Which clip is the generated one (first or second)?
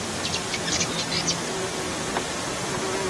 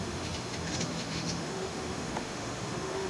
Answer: second